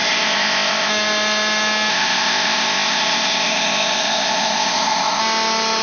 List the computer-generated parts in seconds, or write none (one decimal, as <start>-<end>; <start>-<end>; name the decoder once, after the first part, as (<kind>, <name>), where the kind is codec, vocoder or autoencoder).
0.0-0.9 (codec, ZipCodec); 1.9-5.2